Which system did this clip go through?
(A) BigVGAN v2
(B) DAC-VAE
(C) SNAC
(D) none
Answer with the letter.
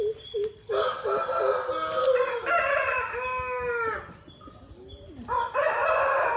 D